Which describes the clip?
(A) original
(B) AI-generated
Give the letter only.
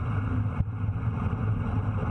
B